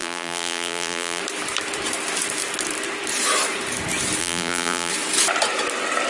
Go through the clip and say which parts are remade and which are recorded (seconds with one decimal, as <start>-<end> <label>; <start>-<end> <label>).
0.0-1.2 remade; 1.2-4.2 recorded; 4.2-4.9 remade; 4.9-6.1 recorded